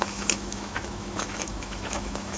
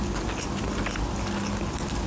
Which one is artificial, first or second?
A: first